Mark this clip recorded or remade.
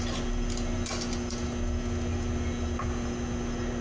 recorded